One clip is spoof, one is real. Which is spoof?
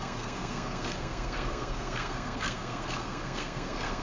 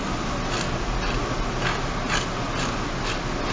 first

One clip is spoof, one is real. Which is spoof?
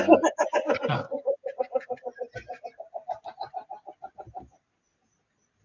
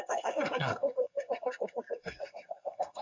second